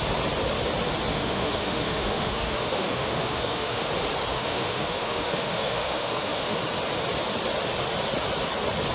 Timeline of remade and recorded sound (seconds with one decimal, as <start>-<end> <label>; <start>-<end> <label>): 0.0-1.1 recorded; 1.1-3.9 remade; 3.9-4.3 recorded; 4.3-6.6 remade; 6.6-8.9 recorded